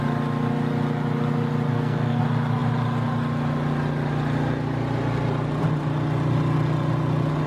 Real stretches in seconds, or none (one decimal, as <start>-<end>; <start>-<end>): 0.0-1.7; 2.2-7.5